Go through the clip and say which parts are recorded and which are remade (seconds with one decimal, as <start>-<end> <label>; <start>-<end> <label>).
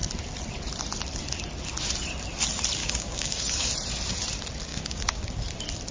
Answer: 0.0-2.8 recorded; 2.8-3.7 remade; 3.7-4.7 recorded; 4.7-5.2 remade; 5.2-5.9 recorded